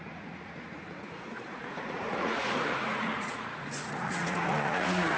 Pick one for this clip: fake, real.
fake